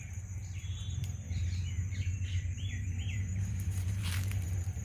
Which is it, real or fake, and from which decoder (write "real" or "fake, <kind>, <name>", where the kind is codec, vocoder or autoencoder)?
fake, vocoder, BigVGAN v2